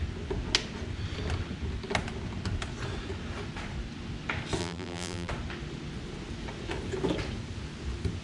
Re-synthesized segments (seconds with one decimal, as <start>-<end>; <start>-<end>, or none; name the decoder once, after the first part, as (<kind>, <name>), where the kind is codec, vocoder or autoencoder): 4.6-5.3 (vocoder, BigVGAN v2)